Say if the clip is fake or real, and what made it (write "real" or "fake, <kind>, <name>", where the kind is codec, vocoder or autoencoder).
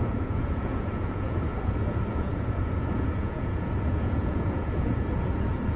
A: fake, vocoder, Vocos